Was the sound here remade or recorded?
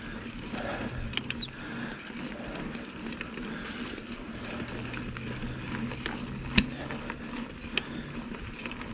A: recorded